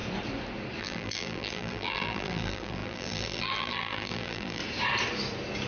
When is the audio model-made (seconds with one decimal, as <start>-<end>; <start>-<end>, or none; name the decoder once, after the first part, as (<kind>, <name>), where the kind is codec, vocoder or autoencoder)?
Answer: 0.8-4.6 (vocoder, BigVGAN v2)